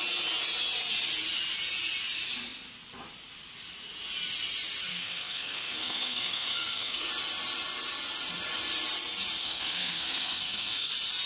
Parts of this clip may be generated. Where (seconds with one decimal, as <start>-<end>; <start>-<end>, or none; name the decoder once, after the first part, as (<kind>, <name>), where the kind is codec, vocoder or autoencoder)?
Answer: 4.9-7.1 (codec, SNAC); 9.4-10.9

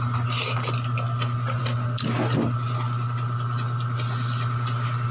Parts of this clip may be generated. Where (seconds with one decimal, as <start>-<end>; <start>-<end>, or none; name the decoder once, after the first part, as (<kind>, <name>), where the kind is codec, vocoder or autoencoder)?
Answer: none

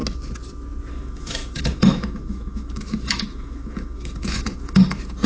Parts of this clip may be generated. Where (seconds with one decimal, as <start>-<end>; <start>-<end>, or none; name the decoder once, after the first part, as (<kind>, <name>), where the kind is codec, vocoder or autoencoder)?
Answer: 0.9-5.3 (autoencoder, DAC-VAE)

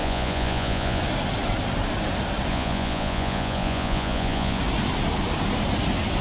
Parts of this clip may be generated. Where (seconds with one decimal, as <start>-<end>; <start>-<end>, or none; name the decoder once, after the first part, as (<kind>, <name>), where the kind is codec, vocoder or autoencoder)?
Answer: 0.0-1.0 (vocoder, Vocos); 2.5-4.6

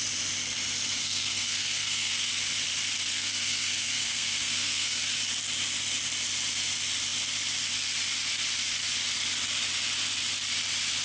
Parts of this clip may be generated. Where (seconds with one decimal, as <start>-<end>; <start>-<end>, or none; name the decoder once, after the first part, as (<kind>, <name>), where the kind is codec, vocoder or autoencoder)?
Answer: 1.0-2.3 (codec, SNAC); 3.1-5.0

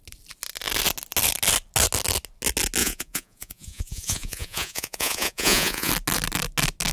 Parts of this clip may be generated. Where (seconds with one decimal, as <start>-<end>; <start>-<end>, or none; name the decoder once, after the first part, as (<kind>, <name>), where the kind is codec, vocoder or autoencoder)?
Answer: 2.8-5.9 (vocoder, Vocos)

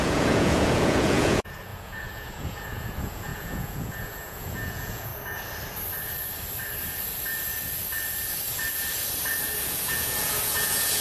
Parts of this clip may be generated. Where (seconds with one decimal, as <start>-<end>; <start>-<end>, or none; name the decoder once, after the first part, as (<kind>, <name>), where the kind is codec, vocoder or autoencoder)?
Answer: 0.0-5.1 (vocoder, Vocos); 9.4-11.0

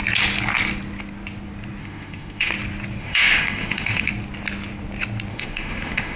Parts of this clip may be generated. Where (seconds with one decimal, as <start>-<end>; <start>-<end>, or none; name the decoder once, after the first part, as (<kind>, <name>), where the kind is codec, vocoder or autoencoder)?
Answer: 1.8-2.5 (autoencoder, DAC-VAE); 3.0-4.1; 5.3-6.2